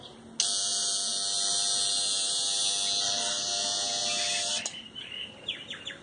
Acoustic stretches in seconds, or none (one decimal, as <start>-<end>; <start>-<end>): 0.0-6.0